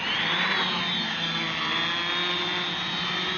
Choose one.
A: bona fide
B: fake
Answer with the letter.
A